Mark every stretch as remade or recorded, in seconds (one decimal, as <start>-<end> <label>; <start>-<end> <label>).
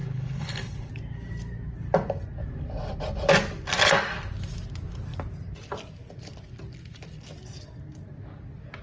0.0-0.9 remade; 0.9-8.8 recorded